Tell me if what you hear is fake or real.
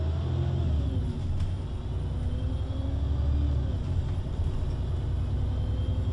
real